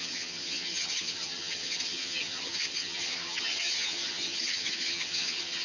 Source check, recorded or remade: remade